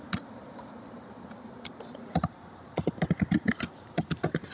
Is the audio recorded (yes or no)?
yes